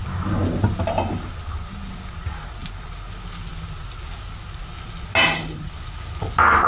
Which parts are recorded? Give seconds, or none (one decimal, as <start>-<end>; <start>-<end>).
0.0-6.7